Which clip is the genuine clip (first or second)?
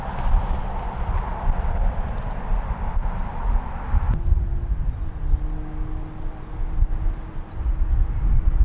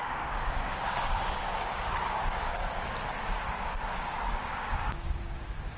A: first